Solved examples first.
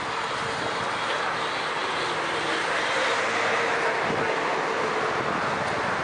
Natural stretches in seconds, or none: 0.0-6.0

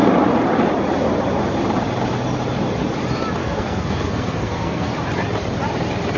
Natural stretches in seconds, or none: 0.0-3.4; 4.9-6.2

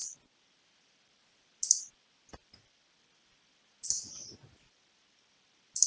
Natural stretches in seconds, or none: 0.0-5.9

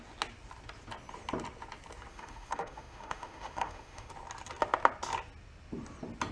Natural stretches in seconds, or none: 0.0-2.1; 4.1-6.3

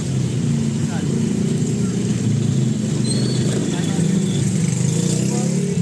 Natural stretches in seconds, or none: 0.0-5.8

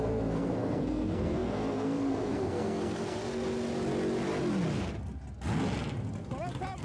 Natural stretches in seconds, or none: 3.2-6.8